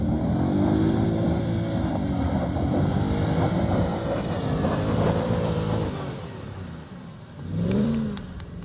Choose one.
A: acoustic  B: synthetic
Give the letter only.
B